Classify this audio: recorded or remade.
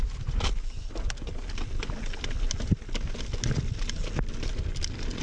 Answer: recorded